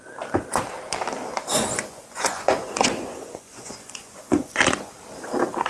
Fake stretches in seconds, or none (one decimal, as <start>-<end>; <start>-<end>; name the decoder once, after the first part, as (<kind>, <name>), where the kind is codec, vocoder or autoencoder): 1.5-4.9 (vocoder, Vocos)